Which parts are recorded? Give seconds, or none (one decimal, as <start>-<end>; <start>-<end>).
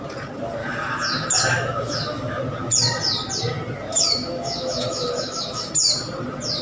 0.0-0.6; 2.4-3.9; 5.7-6.6